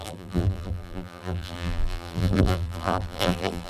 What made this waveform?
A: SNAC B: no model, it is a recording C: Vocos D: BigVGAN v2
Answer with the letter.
D